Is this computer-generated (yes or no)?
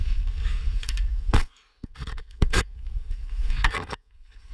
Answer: yes